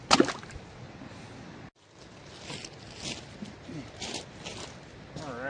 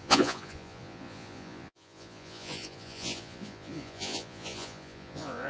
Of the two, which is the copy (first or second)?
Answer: second